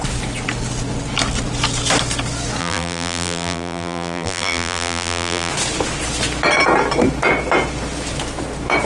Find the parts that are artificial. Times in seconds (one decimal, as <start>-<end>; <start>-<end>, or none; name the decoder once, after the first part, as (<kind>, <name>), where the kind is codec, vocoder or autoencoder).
2.6-5.5 (vocoder, BigVGAN v2)